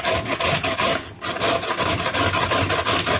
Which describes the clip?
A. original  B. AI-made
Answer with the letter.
A